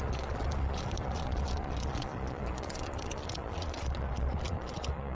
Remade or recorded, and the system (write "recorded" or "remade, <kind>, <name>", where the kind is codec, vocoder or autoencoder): remade, vocoder, Vocos